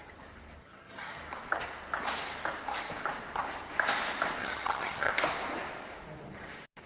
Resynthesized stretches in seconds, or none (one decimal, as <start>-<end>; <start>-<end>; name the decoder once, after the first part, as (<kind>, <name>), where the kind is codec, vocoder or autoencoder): 0.6-1.2 (vocoder, HiFi-GAN); 4.4-5.1